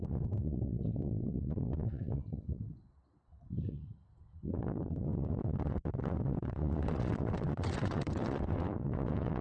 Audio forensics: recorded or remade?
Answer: remade